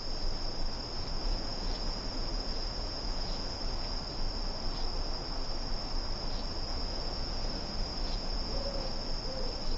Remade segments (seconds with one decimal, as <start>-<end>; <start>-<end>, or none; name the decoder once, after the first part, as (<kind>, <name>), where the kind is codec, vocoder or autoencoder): 1.2-4.0 (vocoder, Vocos); 6.7-8.9